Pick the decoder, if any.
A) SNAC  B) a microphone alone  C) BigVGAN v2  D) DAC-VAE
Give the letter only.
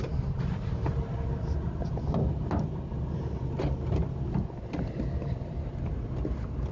B